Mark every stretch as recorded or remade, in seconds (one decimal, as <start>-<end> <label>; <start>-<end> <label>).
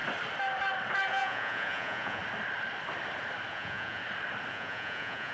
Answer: 0.0-1.1 recorded; 1.1-2.2 remade; 2.2-3.5 recorded; 3.5-4.0 remade; 4.0-4.5 recorded; 4.5-5.3 remade